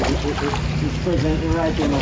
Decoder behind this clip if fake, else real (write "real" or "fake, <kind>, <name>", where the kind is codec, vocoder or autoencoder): real